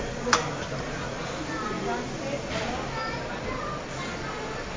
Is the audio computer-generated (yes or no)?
no